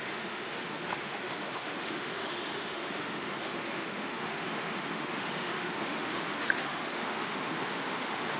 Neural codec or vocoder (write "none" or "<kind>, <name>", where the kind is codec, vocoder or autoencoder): autoencoder, DAC-VAE